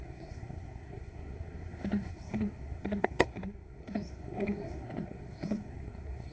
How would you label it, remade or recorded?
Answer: remade